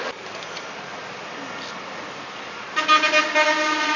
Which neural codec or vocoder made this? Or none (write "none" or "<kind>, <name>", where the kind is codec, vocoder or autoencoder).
none